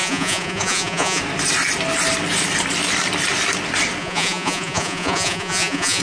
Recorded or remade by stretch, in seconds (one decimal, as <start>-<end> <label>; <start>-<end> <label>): 0.0-1.2 remade; 1.2-4.0 recorded; 4.0-6.0 remade